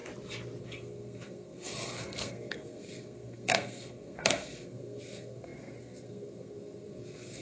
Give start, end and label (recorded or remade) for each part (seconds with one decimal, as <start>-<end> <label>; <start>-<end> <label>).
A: 0.0-0.6 recorded; 0.6-7.4 remade